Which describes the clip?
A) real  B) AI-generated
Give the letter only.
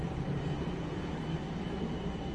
A